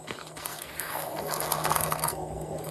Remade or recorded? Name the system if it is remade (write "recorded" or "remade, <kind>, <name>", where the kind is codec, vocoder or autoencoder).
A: remade, codec, SNAC